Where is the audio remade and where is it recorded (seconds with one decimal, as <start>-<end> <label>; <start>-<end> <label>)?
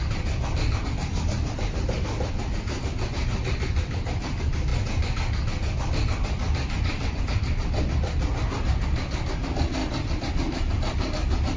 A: 0.0-11.6 recorded